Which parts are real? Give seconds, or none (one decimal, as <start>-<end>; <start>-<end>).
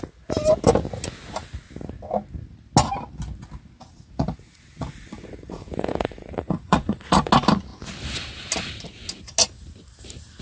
0.0-3.9; 7.3-10.4